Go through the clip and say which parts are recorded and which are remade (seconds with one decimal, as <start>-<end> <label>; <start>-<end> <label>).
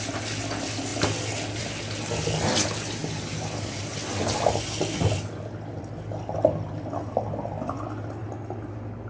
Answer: 0.0-9.1 recorded